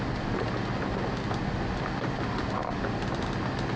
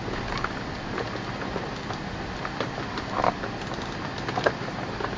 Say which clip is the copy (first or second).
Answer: second